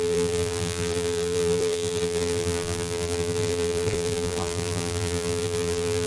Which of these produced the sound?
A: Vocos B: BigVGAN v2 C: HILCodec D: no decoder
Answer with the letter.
B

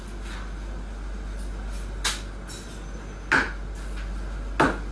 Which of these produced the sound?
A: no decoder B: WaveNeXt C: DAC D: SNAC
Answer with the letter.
A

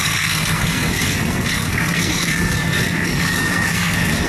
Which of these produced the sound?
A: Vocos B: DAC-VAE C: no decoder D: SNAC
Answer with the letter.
D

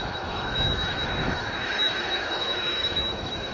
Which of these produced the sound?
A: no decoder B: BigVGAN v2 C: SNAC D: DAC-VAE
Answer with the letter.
D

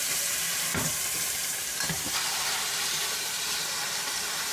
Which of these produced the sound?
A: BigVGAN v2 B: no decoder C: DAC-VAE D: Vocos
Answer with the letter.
A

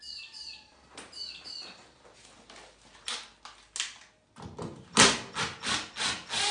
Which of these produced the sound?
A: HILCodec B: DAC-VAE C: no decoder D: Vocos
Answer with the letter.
C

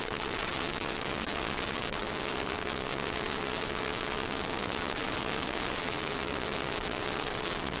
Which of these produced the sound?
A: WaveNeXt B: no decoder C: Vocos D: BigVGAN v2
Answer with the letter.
A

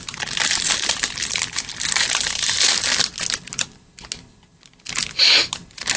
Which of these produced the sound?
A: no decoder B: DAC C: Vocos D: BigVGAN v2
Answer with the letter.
A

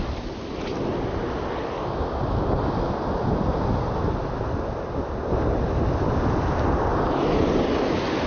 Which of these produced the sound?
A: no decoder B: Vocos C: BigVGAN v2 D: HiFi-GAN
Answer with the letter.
A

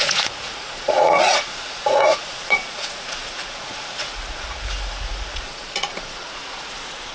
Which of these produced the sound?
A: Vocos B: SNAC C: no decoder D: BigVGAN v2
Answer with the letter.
A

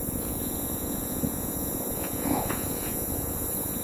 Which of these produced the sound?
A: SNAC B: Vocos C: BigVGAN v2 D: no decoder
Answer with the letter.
B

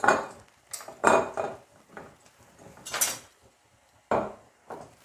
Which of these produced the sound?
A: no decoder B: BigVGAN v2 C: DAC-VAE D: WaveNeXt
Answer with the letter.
A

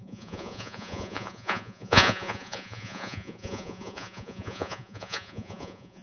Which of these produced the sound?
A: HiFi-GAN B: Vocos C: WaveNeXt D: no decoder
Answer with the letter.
B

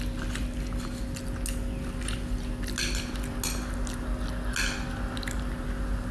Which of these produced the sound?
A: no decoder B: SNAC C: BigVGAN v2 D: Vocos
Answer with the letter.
A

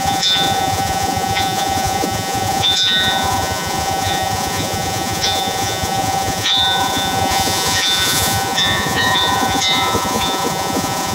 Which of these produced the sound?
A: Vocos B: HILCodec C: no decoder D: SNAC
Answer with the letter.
A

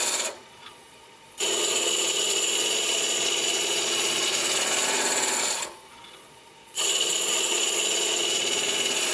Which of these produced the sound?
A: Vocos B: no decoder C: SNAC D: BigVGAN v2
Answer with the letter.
A